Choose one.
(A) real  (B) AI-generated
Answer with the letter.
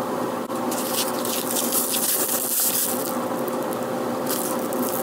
A